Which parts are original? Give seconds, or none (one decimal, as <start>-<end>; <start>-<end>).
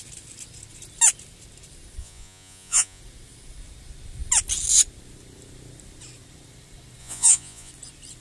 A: 0.0-2.0; 3.0-7.0; 7.7-8.2